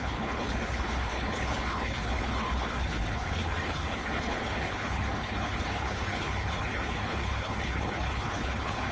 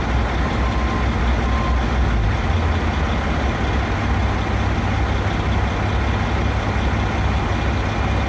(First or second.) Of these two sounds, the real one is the second